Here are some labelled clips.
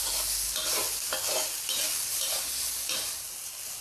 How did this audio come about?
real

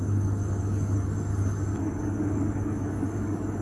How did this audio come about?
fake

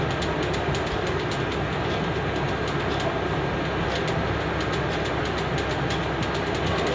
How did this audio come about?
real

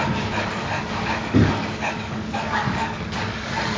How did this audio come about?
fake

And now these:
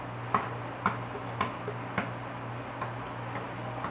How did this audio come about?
real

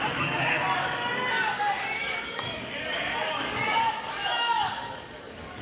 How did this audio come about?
fake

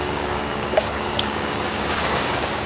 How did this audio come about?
fake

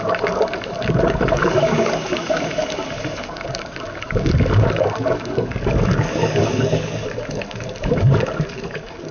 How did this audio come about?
fake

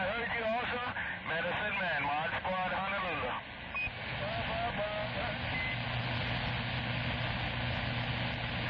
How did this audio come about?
real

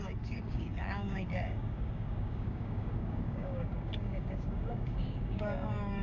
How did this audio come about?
fake